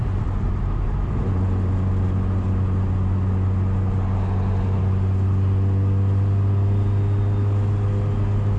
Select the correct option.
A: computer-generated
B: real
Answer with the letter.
B